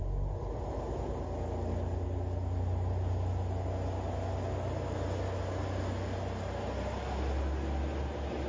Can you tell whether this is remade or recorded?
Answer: recorded